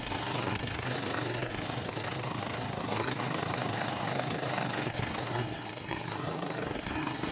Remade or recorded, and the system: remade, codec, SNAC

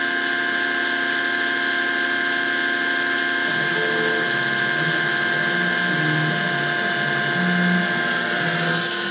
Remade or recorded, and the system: recorded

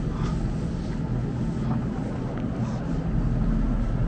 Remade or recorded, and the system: recorded